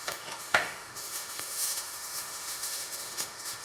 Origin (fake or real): fake